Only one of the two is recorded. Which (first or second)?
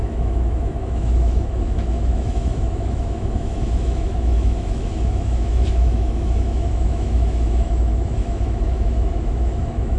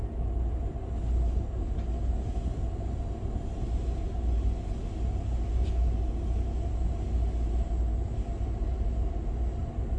second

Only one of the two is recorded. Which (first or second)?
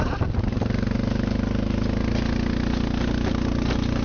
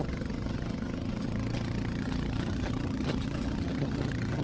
first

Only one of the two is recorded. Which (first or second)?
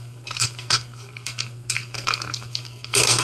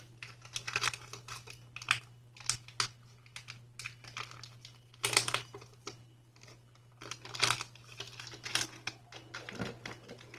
second